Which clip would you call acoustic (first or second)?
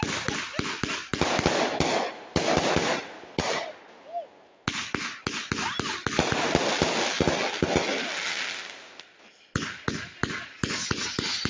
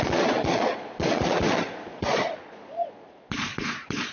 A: first